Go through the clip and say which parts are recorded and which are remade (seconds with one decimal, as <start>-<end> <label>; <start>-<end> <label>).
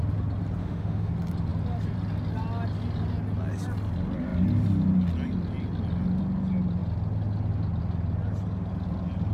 0.0-0.6 recorded; 0.6-1.1 remade; 1.1-9.3 recorded